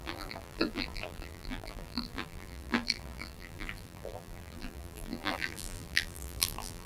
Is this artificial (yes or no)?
yes